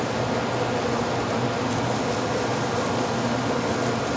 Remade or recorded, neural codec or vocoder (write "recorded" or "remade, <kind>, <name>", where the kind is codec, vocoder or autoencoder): recorded